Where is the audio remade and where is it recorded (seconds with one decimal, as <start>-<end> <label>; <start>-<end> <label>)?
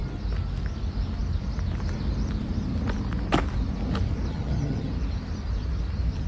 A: 0.0-4.3 recorded; 4.3-4.9 remade; 4.9-6.3 recorded